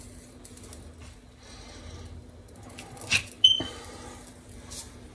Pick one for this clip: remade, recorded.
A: recorded